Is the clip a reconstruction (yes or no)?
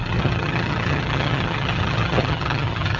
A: yes